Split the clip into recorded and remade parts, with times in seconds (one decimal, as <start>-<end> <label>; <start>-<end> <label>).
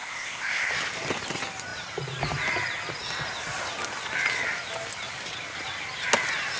0.0-0.7 remade; 0.7-6.6 recorded